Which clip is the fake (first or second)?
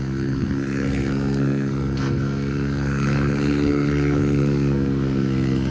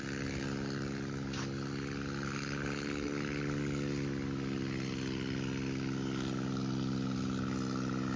first